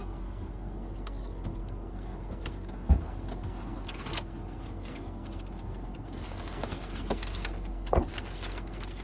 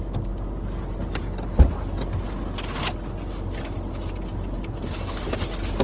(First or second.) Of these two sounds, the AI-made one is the first